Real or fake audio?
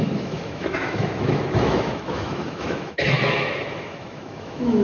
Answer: fake